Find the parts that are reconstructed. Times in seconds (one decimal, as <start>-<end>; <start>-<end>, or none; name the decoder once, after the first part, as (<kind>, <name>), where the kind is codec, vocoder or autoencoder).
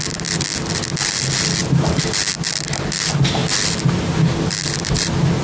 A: 1.6-2.9 (vocoder, BigVGAN v2); 3.4-4.5